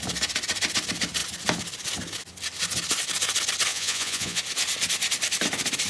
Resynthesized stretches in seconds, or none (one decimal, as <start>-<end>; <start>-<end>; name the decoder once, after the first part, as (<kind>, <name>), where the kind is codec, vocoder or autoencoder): 3.7-4.4 (vocoder, Vocos)